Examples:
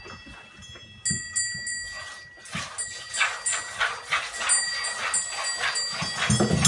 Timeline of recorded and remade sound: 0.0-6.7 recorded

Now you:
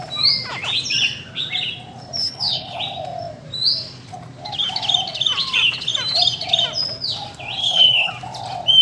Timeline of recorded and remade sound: 0.0-2.2 recorded; 2.2-2.8 remade; 2.8-7.6 recorded; 7.6-8.1 remade; 8.1-8.8 recorded

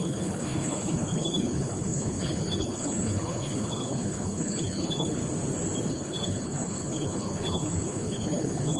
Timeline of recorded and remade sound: 0.0-5.2 remade; 5.2-5.9 recorded; 5.9-8.8 remade

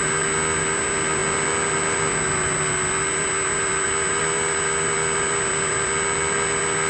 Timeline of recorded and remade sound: 0.0-6.9 recorded